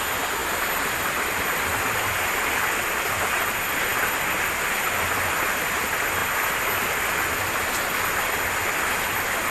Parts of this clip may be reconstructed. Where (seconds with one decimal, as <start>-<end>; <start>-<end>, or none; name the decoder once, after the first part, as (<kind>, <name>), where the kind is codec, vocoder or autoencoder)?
none